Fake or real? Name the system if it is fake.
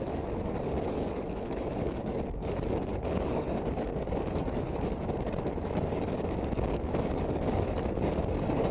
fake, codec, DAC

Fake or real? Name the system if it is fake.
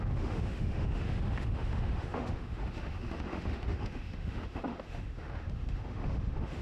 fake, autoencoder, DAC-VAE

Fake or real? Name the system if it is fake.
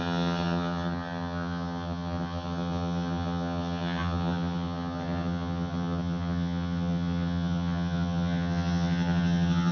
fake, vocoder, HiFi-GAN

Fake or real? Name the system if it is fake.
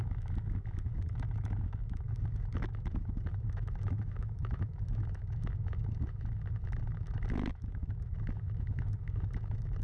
fake, autoencoder, DAC-VAE